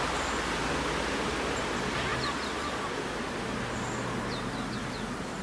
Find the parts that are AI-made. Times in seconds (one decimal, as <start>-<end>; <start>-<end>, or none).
none